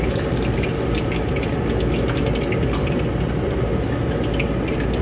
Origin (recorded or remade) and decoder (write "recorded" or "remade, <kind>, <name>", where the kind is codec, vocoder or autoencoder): recorded